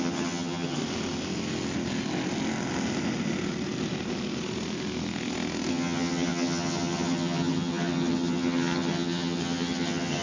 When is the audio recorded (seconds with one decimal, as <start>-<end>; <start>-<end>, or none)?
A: 0.8-5.7